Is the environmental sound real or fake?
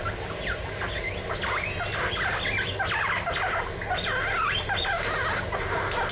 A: real